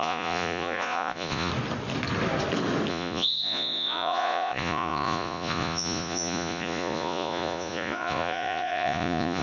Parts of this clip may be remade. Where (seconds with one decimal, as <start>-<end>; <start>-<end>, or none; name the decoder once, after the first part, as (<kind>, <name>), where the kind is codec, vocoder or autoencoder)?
0.0-1.5 (vocoder, Vocos); 2.9-9.4